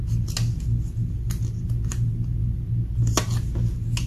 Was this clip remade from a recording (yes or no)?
no